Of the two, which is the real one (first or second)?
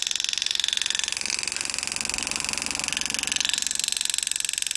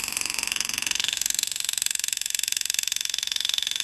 first